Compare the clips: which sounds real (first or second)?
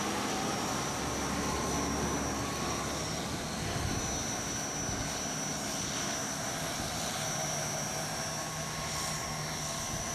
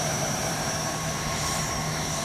first